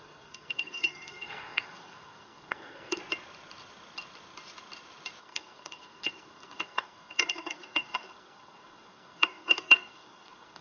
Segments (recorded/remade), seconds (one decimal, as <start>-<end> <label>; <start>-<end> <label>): 0.0-3.0 remade; 3.0-5.2 recorded; 5.2-10.6 remade